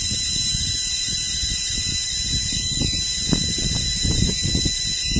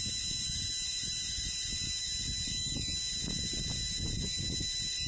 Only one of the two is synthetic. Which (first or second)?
first